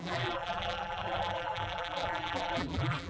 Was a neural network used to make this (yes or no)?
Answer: yes